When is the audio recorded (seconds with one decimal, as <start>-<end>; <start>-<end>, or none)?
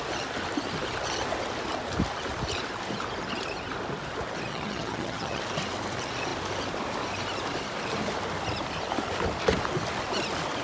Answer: 0.0-4.5; 5.4-10.6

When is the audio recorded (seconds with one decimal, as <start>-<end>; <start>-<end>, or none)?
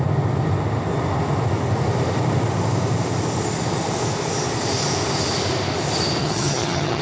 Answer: 0.0-6.2